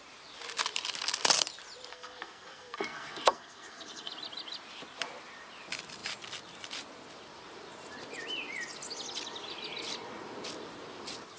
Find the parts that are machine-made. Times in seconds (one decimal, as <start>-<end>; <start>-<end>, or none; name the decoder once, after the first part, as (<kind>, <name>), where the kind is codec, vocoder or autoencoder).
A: 1.9-4.1 (codec, SNAC)